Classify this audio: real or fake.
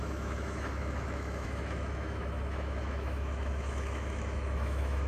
fake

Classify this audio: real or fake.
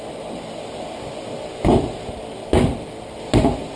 real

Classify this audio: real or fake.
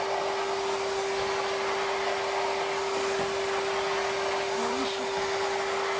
real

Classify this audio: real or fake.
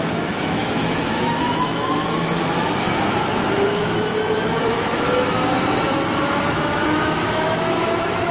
fake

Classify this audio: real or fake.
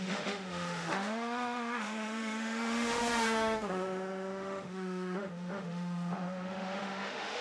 fake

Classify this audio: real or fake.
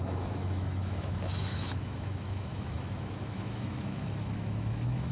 fake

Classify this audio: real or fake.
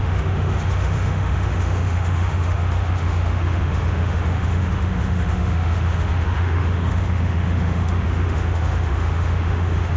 fake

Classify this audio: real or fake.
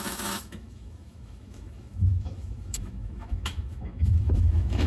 fake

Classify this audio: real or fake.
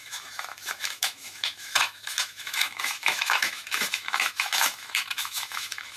fake